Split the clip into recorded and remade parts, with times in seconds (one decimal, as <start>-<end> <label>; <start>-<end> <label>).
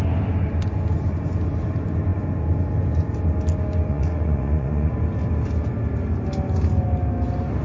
0.0-3.9 recorded; 3.9-4.9 remade; 4.9-7.6 recorded